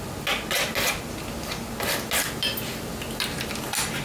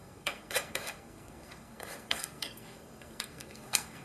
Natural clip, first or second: first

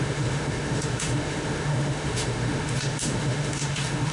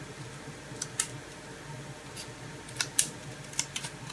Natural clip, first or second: second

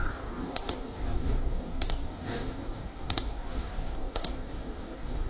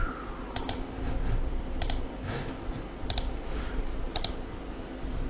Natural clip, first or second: second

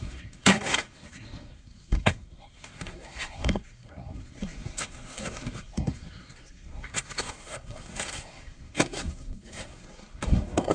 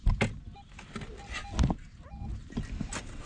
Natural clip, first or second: second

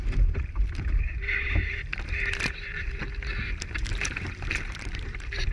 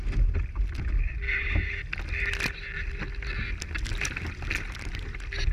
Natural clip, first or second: second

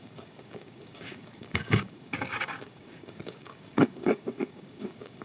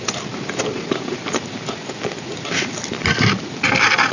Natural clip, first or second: second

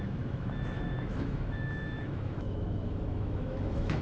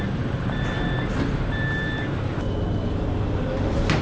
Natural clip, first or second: second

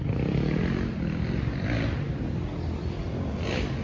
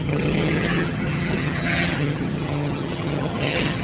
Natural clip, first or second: first